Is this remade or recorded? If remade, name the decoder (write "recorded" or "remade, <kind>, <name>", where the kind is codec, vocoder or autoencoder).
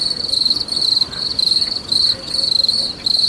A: recorded